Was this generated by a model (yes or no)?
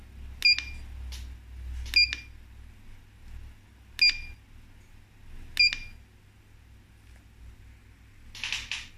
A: no